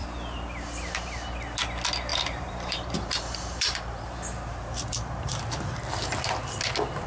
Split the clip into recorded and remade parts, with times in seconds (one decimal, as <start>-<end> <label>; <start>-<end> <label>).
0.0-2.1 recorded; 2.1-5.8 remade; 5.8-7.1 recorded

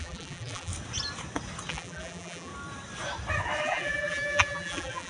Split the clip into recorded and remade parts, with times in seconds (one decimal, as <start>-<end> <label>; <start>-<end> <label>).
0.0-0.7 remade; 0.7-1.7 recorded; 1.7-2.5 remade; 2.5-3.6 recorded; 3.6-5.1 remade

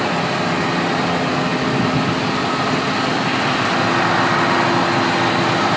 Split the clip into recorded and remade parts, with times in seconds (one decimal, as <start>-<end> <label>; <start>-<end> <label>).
0.0-5.8 recorded

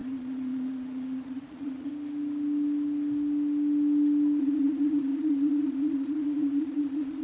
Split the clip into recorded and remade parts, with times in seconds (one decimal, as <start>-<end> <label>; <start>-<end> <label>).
0.0-1.9 remade; 1.9-4.4 recorded; 4.4-7.2 remade

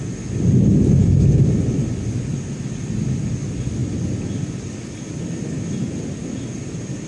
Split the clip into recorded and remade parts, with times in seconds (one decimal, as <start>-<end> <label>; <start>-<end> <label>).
0.0-7.1 recorded

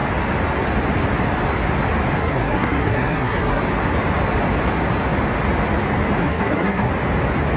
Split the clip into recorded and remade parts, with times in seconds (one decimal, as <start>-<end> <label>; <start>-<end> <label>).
0.0-2.2 recorded; 2.2-3.6 remade; 3.6-6.2 recorded; 6.2-6.9 remade; 6.9-7.6 recorded

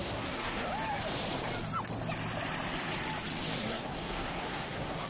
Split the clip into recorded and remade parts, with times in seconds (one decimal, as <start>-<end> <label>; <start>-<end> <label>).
0.0-0.7 remade; 0.7-3.6 recorded; 3.6-5.1 remade

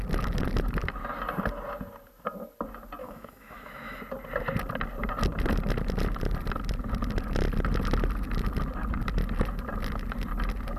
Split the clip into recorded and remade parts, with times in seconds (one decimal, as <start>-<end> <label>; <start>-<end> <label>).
0.0-3.0 recorded; 3.0-4.0 remade; 4.0-10.8 recorded